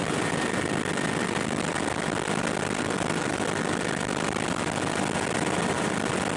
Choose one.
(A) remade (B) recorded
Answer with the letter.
A